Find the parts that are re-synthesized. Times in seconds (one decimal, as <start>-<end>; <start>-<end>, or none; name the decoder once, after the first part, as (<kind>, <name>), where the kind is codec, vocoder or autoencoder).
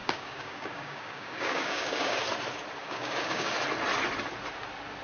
0.0-2.2 (codec, DAC); 2.8-3.5